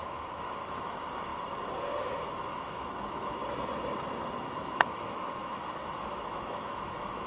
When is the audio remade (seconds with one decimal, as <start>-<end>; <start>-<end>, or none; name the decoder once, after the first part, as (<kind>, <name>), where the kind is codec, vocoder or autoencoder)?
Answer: 0.0-1.3 (autoencoder, DAC-VAE); 2.0-3.4; 4.4-7.3